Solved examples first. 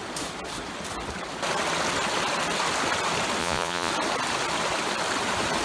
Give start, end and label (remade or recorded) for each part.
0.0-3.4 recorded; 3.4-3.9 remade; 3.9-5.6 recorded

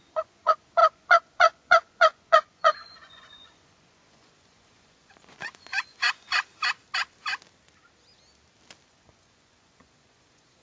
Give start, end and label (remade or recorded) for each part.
0.0-6.5 remade; 6.5-8.9 recorded; 8.9-10.6 remade

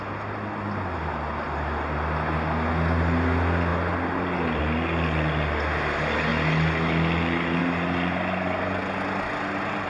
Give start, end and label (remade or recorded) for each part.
0.0-9.9 recorded

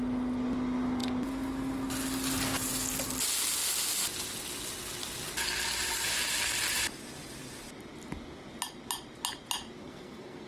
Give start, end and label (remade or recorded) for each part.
0.0-9.8 recorded; 9.8-10.5 remade

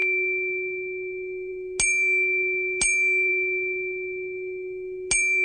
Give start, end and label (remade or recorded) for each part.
0.0-5.4 recorded